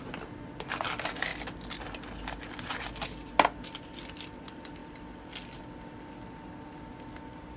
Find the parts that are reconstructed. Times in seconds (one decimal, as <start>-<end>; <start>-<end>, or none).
none